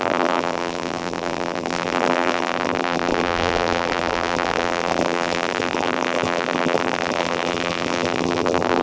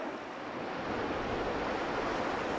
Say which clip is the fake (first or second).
first